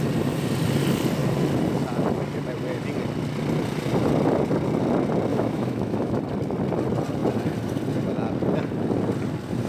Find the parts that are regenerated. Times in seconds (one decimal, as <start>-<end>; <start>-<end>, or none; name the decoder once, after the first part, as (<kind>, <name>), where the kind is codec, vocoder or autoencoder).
5.3-6.2 (autoencoder, DAC-VAE)